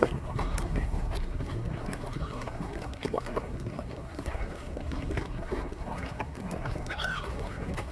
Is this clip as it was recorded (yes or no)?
no